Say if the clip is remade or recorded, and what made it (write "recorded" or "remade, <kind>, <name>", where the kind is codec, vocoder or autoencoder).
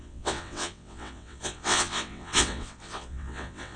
remade, vocoder, WaveNeXt